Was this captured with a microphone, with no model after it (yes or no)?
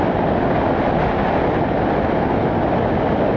yes